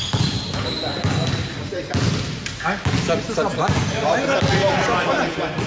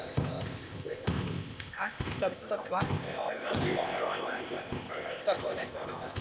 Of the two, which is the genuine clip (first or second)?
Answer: first